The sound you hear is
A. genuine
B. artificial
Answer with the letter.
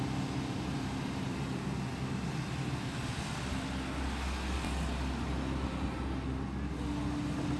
A